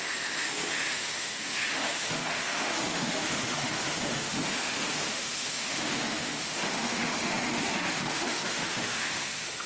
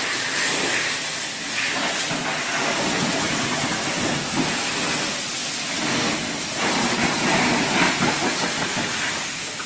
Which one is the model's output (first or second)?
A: first